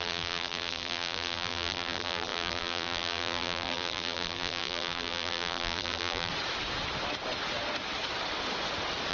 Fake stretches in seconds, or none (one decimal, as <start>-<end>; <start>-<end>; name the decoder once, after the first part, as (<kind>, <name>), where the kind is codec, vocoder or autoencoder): 0.0-6.3 (vocoder, BigVGAN v2)